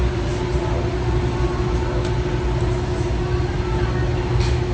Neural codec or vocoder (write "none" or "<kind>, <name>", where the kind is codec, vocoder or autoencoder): none